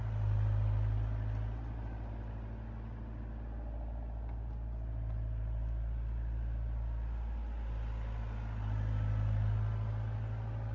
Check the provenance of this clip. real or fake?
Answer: real